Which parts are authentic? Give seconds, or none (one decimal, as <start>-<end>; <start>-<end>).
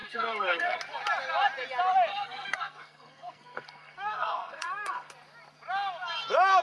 0.8-2.1; 5.1-6.6